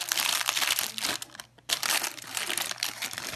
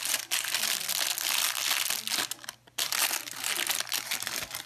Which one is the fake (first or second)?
first